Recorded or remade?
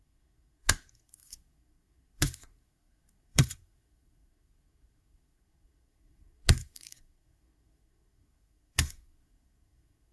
remade